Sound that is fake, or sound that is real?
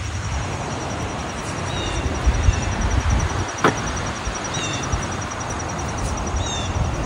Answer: real